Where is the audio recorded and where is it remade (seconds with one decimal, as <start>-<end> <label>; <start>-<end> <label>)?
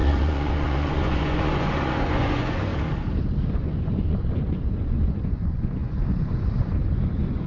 0.0-2.7 remade; 2.7-3.5 recorded; 3.5-7.5 remade